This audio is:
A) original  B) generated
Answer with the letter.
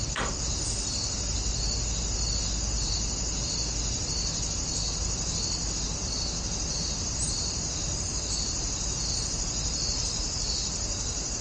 A